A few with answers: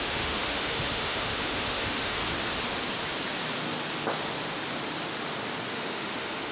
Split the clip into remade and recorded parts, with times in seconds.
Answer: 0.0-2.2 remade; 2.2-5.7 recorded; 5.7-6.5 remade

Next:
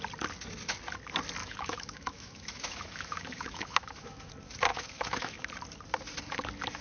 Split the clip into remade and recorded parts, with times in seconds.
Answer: 0.0-1.4 recorded; 1.4-4.3 remade; 4.3-4.7 recorded; 4.7-5.5 remade; 5.5-6.8 recorded

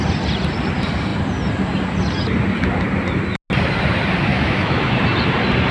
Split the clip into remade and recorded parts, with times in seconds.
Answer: 0.0-4.3 recorded; 4.3-4.9 remade; 4.9-5.7 recorded

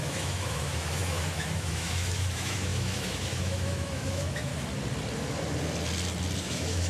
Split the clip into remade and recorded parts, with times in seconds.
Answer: 0.0-4.5 remade; 4.5-6.4 recorded; 6.4-6.9 remade

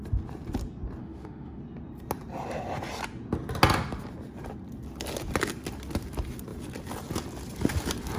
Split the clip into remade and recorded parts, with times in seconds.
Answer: 0.0-1.0 recorded; 1.0-1.6 remade; 1.6-8.2 recorded